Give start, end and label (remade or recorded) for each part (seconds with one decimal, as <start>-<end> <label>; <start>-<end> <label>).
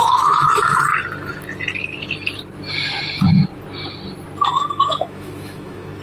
0.0-0.9 remade; 0.9-4.5 recorded; 4.5-6.0 remade